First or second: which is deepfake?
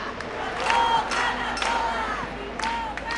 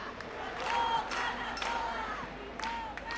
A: second